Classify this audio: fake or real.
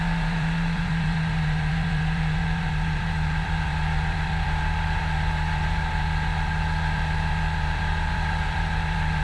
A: fake